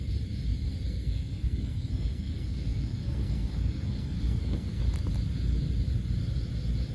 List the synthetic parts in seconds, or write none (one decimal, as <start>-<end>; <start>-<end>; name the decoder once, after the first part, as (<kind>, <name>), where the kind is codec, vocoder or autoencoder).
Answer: 0.7-4.8 (codec, SNAC)